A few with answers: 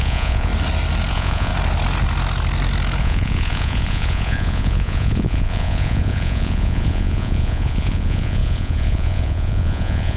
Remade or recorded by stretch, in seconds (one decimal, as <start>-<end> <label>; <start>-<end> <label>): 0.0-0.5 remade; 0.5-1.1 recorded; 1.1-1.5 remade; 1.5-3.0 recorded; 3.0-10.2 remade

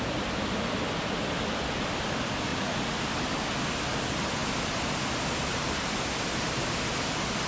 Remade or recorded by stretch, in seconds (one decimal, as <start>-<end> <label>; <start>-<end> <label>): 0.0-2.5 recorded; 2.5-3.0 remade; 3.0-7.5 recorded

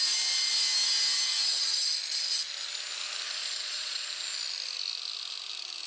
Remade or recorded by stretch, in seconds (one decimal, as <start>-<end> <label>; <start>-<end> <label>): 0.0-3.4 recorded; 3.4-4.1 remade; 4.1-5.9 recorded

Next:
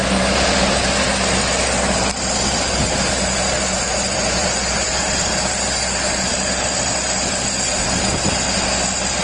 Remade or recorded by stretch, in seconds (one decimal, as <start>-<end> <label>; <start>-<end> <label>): 0.0-3.8 recorded; 3.8-4.9 remade; 4.9-9.2 recorded